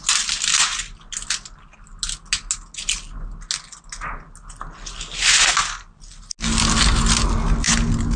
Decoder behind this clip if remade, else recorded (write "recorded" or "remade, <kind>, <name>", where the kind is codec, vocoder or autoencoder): recorded